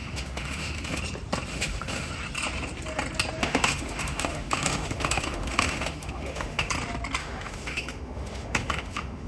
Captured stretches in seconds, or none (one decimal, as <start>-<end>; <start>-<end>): 1.0-1.5; 2.1-3.4; 6.7-7.2